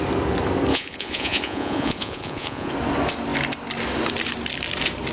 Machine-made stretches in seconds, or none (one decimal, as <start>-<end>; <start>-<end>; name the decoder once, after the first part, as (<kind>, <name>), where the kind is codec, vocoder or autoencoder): 0.7-2.7 (vocoder, Vocos)